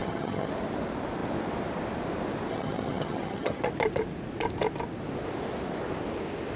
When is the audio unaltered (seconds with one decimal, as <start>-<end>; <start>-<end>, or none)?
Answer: 0.5-2.5; 3.6-6.6